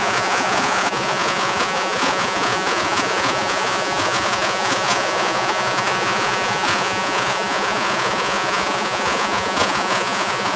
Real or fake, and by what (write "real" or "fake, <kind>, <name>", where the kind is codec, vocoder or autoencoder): fake, vocoder, Vocos